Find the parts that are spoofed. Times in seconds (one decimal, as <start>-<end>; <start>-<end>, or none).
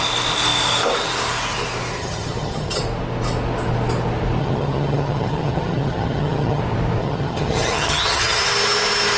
2.0-2.8; 4.4-6.6; 7.0-8.4